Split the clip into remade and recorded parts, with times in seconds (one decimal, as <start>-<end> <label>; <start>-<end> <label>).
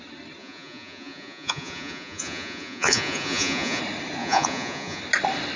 0.0-0.4 recorded; 0.4-3.8 remade; 3.8-4.2 recorded; 4.2-5.0 remade; 5.0-5.6 recorded